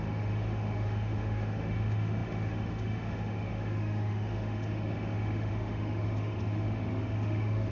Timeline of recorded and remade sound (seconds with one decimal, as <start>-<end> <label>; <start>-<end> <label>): 0.0-7.7 remade